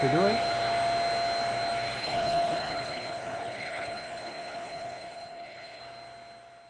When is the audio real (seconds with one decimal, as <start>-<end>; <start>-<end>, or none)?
0.0-2.0; 5.8-6.7